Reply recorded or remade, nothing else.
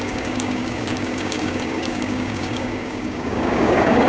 remade